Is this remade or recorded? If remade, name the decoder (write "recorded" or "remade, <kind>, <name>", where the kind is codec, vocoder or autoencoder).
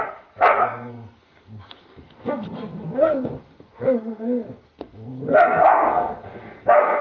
remade, codec, SNAC